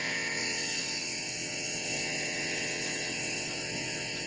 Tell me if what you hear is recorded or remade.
remade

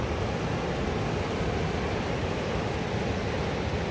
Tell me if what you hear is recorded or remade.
recorded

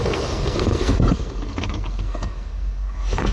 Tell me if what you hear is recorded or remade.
remade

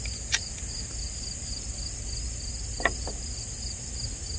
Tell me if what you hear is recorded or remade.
recorded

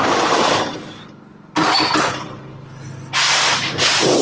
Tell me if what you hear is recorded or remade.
recorded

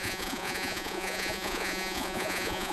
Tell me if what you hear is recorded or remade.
remade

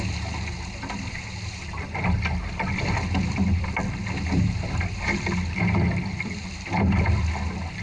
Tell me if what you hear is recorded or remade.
recorded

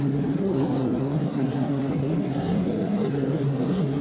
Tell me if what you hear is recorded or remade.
remade